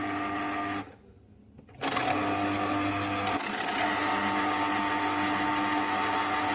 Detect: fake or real real